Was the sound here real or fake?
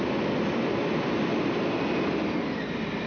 real